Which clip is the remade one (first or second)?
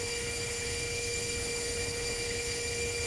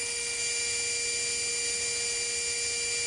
first